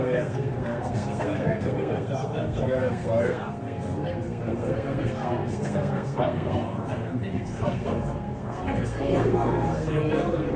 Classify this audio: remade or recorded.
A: remade